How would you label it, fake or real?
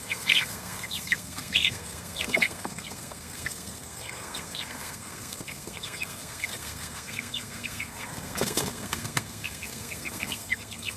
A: fake